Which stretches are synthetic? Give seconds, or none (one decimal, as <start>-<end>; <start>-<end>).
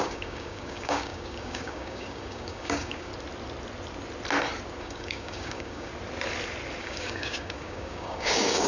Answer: 0.0-3.1; 4.8-5.9; 6.8-8.7